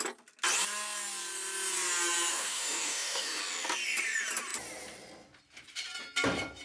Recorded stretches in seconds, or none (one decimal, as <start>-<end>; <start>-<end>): 0.0-2.3; 3.4-6.6